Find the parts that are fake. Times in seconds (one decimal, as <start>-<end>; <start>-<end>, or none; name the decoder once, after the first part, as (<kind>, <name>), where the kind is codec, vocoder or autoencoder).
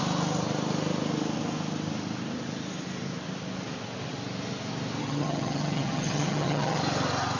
5.0-6.8 (vocoder, HiFi-GAN)